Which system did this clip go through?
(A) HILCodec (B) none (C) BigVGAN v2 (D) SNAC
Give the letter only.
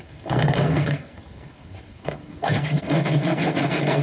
D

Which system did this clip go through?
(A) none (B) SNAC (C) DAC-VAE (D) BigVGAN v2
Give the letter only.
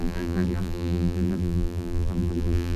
D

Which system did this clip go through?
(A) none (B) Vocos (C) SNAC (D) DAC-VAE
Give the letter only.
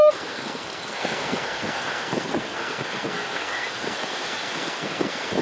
C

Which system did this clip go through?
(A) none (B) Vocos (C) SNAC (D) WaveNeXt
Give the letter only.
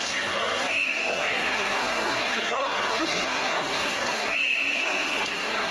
C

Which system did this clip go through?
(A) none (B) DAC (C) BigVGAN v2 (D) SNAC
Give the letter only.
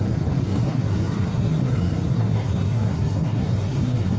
D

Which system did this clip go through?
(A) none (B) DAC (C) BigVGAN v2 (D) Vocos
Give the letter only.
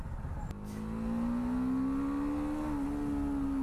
A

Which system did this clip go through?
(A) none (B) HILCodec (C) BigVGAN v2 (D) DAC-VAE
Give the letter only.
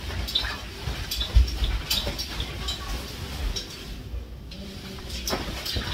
A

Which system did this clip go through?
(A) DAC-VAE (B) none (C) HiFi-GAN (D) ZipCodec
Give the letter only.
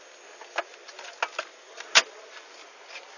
B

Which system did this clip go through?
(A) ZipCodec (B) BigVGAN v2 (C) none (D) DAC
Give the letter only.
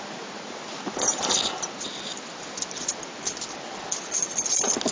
C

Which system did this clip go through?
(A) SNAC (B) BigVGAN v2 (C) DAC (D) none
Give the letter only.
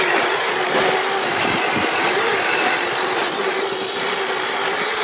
D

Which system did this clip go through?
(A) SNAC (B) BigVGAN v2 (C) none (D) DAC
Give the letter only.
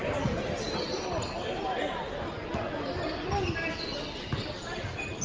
C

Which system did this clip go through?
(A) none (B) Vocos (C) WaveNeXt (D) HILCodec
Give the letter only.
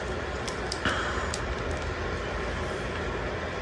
A